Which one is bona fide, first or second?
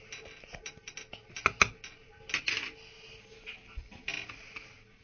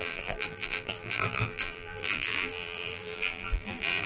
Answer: first